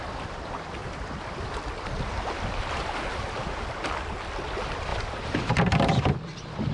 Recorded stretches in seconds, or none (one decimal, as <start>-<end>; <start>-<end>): 0.8-4.4